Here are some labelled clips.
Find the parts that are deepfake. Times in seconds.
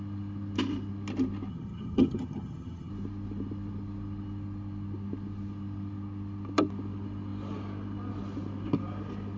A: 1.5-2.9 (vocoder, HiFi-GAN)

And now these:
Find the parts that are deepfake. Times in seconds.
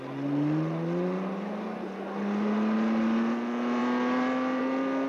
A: none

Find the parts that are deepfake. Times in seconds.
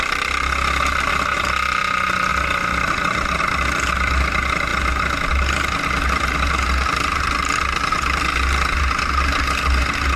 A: none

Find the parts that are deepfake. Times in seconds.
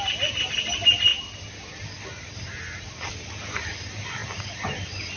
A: none